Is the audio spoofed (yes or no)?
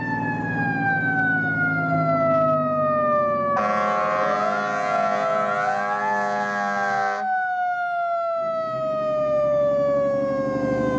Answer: no